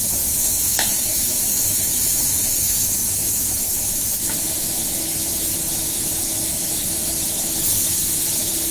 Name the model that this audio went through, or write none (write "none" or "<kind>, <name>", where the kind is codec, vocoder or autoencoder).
autoencoder, DAC-VAE